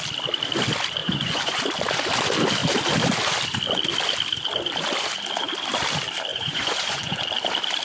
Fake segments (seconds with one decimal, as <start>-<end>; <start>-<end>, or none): 1.0-1.6; 6.3-7.2